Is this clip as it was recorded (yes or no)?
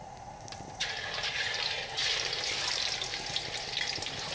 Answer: yes